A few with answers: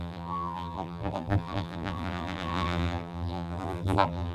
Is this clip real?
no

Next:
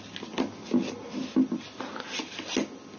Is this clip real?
yes